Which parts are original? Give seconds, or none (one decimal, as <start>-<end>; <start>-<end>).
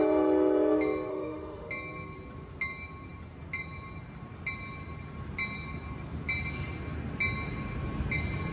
0.0-1.1; 1.7-8.5